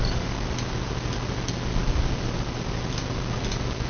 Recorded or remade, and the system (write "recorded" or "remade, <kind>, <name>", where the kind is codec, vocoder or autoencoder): recorded